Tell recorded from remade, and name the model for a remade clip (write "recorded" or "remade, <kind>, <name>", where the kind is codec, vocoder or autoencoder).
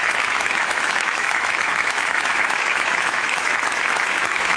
remade, autoencoder, DAC-VAE